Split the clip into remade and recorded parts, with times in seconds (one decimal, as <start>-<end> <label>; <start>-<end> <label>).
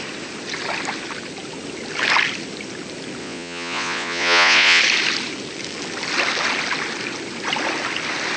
0.0-3.2 recorded; 3.2-4.8 remade; 4.8-8.4 recorded